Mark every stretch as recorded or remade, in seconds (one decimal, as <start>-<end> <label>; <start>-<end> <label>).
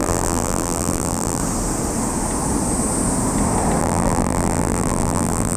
0.0-1.4 remade; 1.4-3.8 recorded; 3.8-5.6 remade